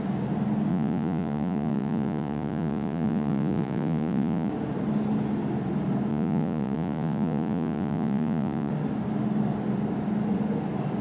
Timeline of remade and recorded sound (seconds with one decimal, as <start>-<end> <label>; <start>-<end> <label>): 0.0-0.7 recorded; 0.7-4.5 remade; 4.5-6.1 recorded; 6.1-8.7 remade; 8.7-11.0 recorded

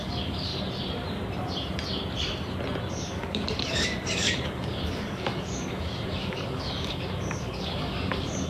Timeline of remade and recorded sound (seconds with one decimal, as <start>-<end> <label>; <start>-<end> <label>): 0.0-0.5 remade; 0.5-2.9 recorded; 2.9-8.5 remade

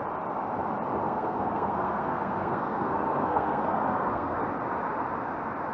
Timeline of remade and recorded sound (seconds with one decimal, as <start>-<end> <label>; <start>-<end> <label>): 0.0-1.0 recorded; 1.0-4.4 remade; 4.4-5.7 recorded

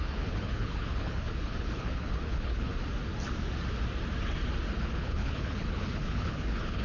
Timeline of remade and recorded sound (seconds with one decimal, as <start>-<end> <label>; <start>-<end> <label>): 0.0-2.7 remade; 2.7-4.8 recorded; 4.8-6.8 remade

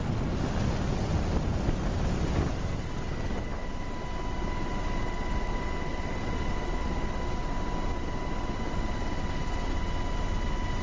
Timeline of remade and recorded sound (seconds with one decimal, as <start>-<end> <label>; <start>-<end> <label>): 0.0-10.8 recorded

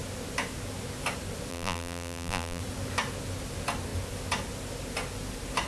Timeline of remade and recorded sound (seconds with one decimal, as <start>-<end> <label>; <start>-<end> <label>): 0.0-1.5 recorded; 1.5-2.6 remade; 2.6-5.7 recorded